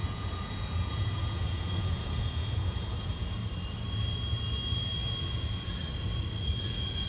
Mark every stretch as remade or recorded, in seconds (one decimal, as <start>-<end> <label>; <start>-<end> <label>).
0.0-3.4 remade; 3.4-5.2 recorded; 5.2-5.8 remade; 5.8-6.4 recorded; 6.4-7.1 remade